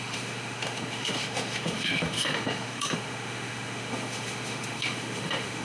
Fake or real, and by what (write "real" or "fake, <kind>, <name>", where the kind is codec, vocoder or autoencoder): fake, autoencoder, DAC-VAE